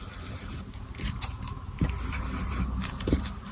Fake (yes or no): yes